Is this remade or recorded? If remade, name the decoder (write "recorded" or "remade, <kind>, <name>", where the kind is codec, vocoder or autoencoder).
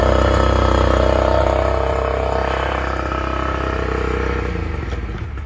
recorded